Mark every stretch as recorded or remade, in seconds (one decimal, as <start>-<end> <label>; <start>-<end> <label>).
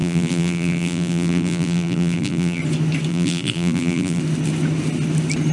0.0-2.6 remade; 2.6-3.1 recorded; 3.1-4.2 remade; 4.2-5.5 recorded